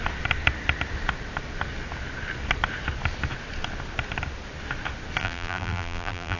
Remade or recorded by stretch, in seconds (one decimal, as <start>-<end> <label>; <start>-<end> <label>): 0.0-5.2 recorded; 5.2-6.4 remade